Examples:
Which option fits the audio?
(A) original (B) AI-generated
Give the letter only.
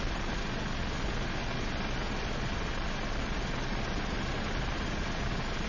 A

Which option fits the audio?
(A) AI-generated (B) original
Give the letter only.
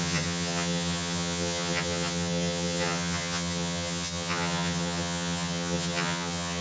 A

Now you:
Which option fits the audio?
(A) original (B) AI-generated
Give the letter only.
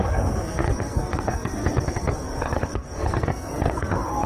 B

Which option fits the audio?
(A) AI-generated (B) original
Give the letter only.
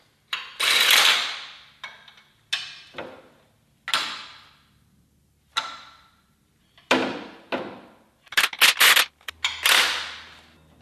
B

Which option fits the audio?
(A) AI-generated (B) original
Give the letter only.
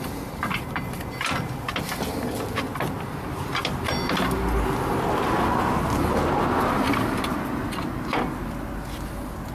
B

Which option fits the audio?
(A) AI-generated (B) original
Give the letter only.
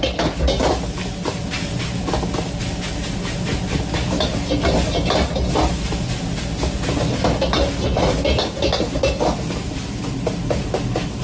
B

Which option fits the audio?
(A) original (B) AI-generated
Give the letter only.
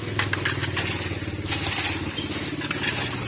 A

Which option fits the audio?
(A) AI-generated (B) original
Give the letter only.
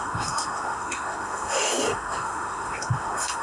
A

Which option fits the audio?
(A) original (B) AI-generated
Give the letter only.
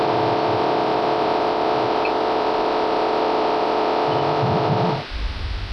A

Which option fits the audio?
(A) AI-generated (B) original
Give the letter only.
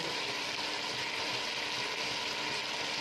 B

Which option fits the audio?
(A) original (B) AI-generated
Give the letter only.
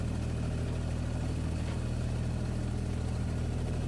A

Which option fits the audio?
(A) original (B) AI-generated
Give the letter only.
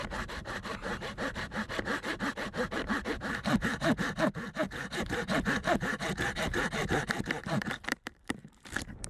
B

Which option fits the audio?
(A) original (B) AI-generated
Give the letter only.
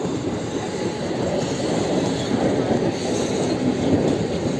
A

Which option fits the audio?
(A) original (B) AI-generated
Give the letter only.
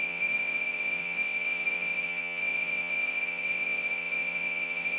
B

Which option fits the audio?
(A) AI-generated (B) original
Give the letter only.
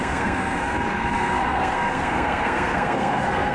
A